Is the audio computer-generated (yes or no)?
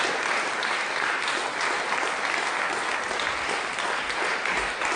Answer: no